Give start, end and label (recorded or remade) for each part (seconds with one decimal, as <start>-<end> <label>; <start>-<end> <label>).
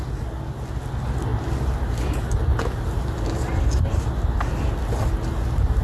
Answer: 0.0-5.8 recorded